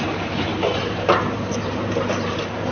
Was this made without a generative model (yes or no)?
no